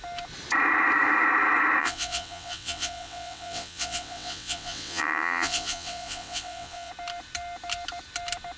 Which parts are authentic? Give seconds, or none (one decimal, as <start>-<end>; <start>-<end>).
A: 0.0-1.8; 6.9-8.6

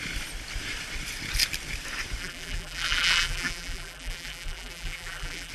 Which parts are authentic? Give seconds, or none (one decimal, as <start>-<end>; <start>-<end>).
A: 0.0-2.2

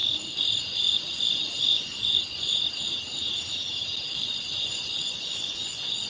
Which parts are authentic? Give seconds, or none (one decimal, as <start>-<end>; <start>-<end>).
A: 0.0-0.6; 2.5-4.2

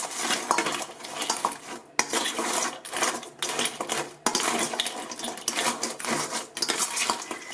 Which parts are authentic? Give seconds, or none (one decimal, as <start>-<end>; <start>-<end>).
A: 0.0-7.5

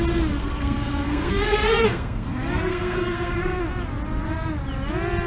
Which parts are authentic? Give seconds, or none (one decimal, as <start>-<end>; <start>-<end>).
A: 0.0-0.4; 3.6-5.3

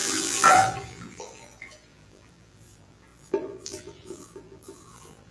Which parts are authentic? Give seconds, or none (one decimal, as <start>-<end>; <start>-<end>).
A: none

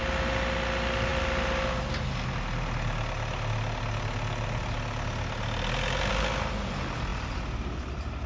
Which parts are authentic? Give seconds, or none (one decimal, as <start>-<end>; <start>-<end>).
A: 0.0-8.3

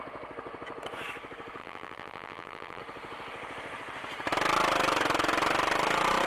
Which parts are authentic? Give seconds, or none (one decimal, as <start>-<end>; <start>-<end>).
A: 0.0-1.6; 2.8-6.3